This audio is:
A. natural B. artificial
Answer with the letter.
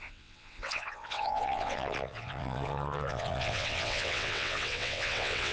B